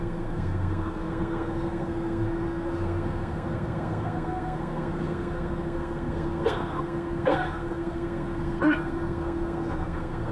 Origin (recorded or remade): remade